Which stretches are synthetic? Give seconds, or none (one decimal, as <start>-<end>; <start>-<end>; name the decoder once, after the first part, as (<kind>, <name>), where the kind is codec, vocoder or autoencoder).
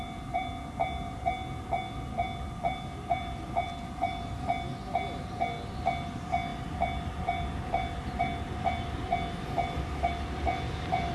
none